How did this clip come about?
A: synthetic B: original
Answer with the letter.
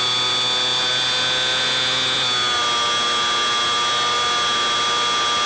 B